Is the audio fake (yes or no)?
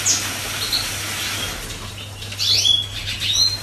no